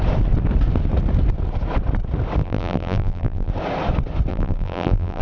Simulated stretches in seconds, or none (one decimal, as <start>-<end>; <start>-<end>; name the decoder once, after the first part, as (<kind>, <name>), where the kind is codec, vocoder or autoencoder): 2.4-3.5 (vocoder, BigVGAN v2); 4.3-5.2